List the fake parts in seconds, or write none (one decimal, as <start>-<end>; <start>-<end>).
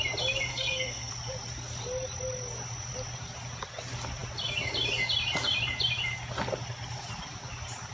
0.5-1.1